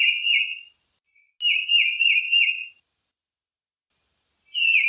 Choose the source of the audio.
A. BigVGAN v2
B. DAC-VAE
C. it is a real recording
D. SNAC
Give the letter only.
C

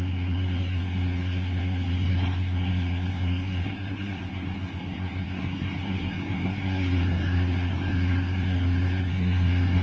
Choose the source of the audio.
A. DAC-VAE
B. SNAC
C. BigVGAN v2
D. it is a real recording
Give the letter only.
B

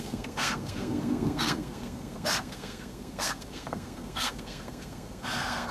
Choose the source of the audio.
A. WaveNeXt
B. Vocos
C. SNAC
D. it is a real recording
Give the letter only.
C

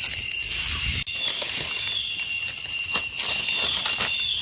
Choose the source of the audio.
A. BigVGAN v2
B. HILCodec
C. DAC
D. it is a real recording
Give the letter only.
D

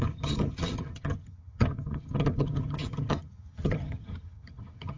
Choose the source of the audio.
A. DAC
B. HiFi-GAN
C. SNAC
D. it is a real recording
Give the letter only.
B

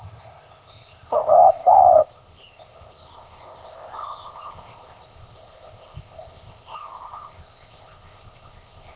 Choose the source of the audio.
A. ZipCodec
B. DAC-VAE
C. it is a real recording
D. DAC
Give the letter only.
A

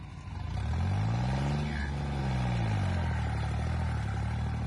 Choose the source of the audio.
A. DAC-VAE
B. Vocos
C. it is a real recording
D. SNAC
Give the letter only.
C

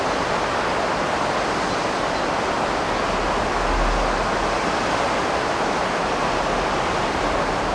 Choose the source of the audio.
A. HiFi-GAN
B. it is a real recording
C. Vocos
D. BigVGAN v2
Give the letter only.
B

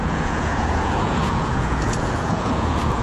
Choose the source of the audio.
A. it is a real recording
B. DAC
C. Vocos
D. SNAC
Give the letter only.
C